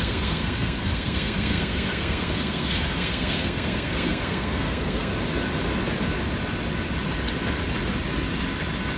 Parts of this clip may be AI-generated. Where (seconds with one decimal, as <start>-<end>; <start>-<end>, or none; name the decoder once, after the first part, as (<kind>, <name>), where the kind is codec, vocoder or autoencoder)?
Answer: 0.0-5.1 (codec, SNAC)